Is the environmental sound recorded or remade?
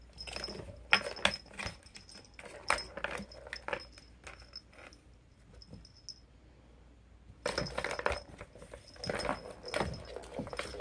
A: recorded